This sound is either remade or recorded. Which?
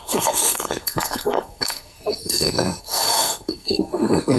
remade